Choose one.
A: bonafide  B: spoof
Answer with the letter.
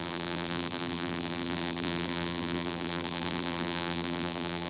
B